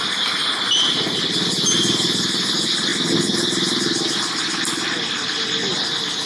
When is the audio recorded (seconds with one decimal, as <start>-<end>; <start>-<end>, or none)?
0.0-6.3